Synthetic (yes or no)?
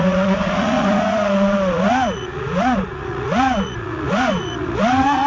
yes